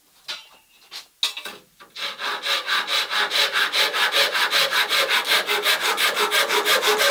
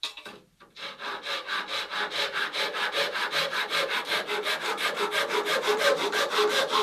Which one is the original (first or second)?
first